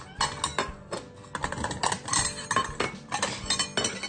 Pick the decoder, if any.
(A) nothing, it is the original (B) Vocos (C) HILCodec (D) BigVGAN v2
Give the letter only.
A